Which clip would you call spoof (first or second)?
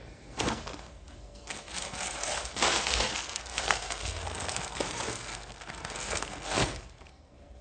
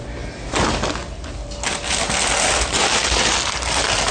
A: first